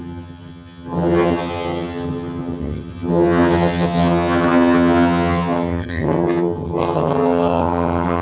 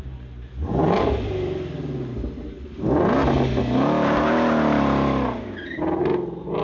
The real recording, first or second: second